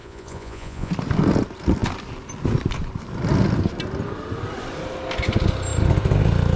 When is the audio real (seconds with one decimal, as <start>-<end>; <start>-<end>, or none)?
0.9-6.6